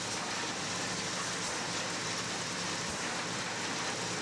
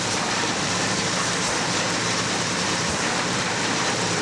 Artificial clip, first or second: second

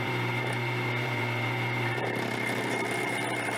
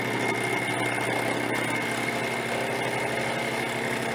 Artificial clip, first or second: first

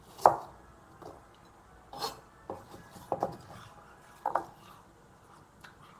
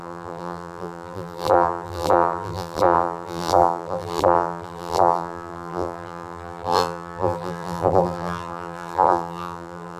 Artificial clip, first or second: second